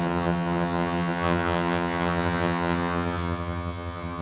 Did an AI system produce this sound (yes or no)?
yes